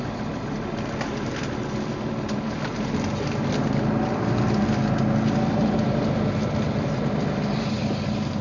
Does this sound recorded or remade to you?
recorded